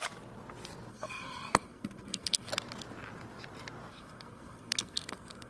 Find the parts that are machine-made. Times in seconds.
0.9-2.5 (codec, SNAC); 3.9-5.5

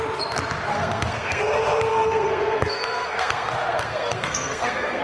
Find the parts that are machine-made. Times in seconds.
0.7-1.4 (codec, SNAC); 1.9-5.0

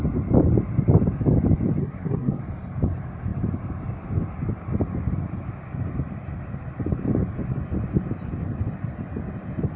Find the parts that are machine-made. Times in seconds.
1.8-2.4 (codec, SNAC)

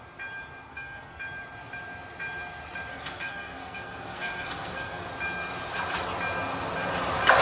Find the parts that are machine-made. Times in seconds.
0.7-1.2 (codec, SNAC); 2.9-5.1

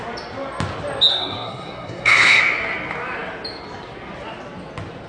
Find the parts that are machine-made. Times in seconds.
1.1-2.4 (codec, SNAC)